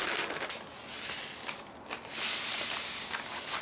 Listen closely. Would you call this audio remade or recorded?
recorded